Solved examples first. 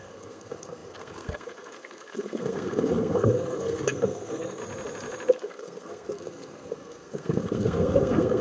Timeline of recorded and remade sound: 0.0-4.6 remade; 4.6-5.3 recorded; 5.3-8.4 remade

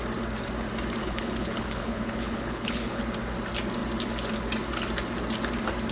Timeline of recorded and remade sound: 0.0-1.0 recorded; 1.0-3.0 remade; 3.0-5.9 recorded

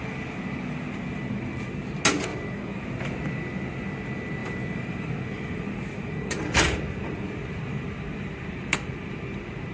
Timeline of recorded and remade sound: 0.0-2.3 recorded; 2.3-3.0 remade; 3.0-4.4 recorded; 4.4-6.8 remade; 6.8-8.1 recorded; 8.1-8.9 remade; 8.9-9.7 recorded

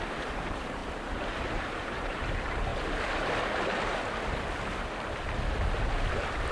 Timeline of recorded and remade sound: 0.0-0.8 remade; 0.8-1.7 recorded; 1.7-2.7 remade; 2.7-6.5 recorded

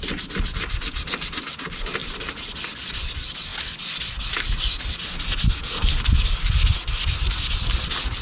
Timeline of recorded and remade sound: 0.0-8.2 recorded